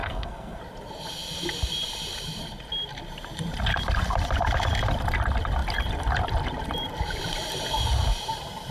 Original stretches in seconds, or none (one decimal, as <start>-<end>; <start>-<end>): 0.6-8.7

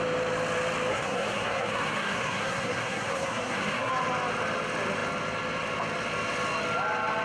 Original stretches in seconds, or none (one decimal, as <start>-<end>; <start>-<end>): 0.0-0.9; 3.9-7.2

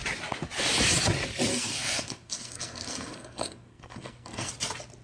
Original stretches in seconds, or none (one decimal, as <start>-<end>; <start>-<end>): 0.0-1.5; 4.5-5.0

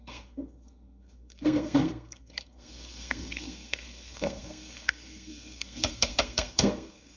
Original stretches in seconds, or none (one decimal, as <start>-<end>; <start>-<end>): none

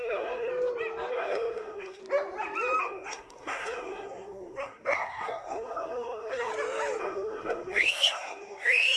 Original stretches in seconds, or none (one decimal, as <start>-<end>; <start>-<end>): 0.5-1.1; 2.0-2.8; 6.5-7.0

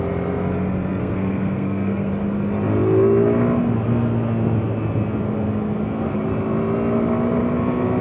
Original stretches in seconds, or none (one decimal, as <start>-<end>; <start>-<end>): 0.0-1.0; 2.1-8.0

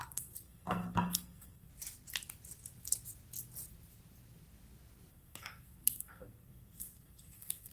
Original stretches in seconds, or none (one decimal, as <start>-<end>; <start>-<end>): 1.7-5.1

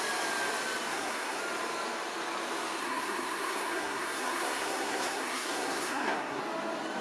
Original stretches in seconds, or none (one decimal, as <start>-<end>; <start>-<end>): 0.0-0.9; 1.4-2.8; 6.4-7.0